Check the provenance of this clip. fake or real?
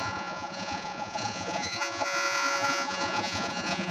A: fake